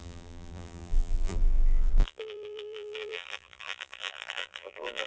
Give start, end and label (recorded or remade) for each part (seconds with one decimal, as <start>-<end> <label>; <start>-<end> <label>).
0.0-5.1 remade